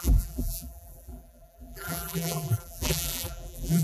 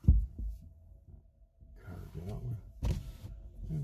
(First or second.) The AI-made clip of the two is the first